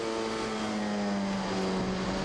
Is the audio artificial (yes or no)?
no